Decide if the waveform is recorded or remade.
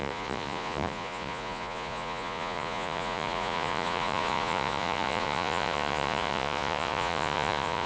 remade